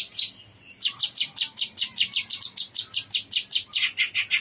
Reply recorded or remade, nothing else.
recorded